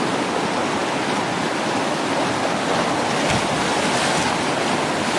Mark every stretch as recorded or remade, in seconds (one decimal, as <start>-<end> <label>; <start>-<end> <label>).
0.0-5.2 recorded